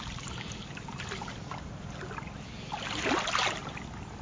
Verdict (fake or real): real